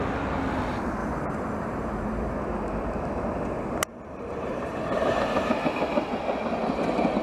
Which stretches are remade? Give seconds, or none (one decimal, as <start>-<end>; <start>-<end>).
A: 1.0-2.4; 3.9-5.5